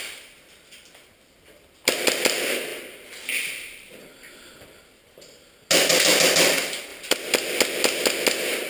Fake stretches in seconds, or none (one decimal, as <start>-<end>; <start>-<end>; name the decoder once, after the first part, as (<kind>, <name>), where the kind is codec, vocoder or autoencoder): none